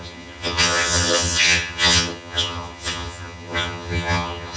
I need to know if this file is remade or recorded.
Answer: remade